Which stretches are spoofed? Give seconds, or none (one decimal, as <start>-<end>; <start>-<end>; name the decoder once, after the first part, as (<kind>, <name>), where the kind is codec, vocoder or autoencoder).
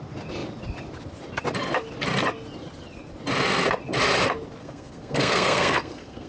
4.6-6.3 (codec, SNAC)